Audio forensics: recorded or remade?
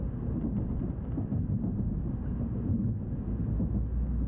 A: recorded